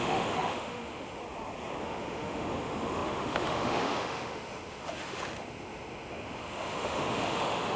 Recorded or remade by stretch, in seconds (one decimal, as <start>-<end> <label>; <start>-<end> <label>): 0.0-1.2 remade; 1.2-1.8 recorded; 1.8-7.8 remade